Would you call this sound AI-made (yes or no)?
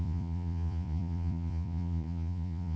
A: yes